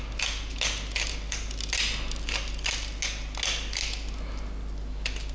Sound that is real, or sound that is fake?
real